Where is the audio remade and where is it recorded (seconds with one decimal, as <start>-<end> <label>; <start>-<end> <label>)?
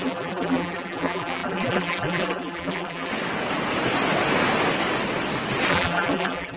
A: 0.0-3.1 remade; 3.1-5.7 recorded; 5.7-6.6 remade